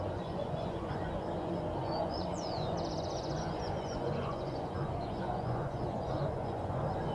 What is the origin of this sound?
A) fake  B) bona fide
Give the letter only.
A